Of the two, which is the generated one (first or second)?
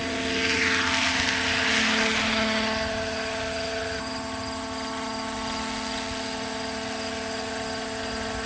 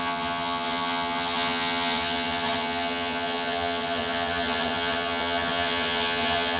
second